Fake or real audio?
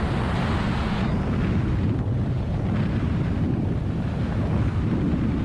real